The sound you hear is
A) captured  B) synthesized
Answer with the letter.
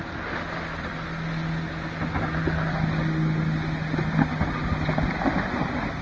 A